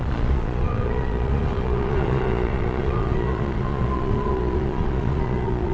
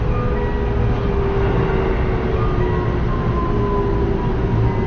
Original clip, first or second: second